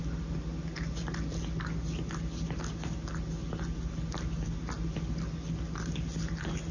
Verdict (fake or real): real